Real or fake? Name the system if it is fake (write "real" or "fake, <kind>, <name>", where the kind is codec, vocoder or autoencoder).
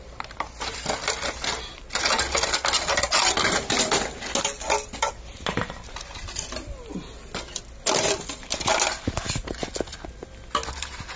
real